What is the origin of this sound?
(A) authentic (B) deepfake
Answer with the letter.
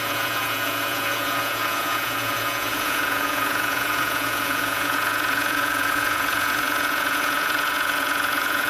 B